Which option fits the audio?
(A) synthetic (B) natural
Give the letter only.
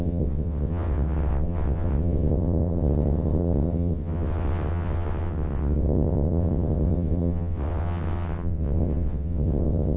A